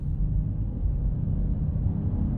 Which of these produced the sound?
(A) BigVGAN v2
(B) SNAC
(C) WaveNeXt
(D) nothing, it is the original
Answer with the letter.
D